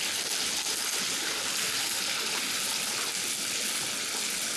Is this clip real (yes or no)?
yes